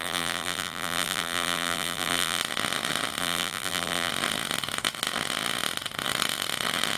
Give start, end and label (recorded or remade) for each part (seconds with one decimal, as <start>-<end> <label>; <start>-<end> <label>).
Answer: 0.0-2.4 remade; 2.4-3.2 recorded; 3.2-4.1 remade; 4.1-7.0 recorded